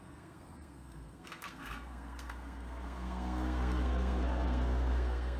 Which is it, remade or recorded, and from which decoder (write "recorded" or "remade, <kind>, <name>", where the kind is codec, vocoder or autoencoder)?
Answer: remade, codec, SNAC